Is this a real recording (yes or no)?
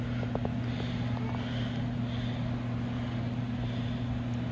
yes